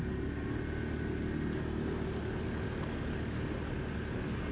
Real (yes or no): yes